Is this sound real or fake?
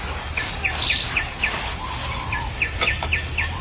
real